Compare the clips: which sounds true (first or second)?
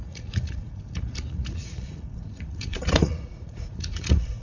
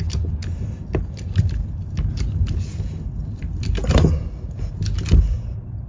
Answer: second